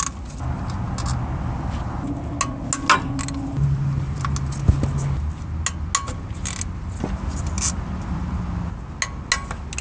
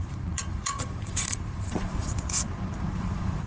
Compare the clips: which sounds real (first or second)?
first